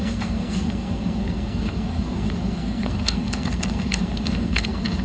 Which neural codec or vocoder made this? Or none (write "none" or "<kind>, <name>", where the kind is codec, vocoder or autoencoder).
codec, SNAC